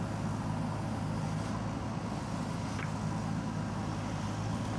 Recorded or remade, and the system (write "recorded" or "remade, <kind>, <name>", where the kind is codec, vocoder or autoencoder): recorded